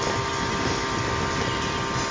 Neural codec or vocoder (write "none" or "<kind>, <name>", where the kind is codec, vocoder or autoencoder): none